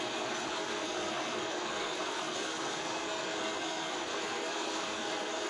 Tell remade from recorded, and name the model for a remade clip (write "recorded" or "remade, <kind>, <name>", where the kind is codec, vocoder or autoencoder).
remade, codec, SNAC